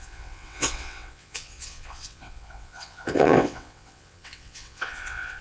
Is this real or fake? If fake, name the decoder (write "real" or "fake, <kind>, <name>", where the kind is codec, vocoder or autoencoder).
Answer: fake, vocoder, WaveNeXt